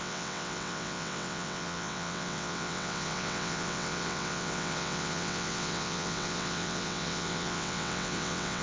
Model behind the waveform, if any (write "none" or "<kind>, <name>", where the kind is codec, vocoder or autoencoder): vocoder, WaveNeXt